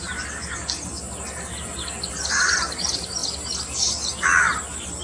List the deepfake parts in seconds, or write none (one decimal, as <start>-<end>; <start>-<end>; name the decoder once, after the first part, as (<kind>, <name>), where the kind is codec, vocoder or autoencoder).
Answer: 0.0-0.9 (vocoder, BigVGAN v2); 2.1-3.2